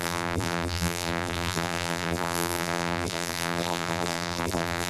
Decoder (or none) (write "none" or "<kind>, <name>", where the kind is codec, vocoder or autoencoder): vocoder, BigVGAN v2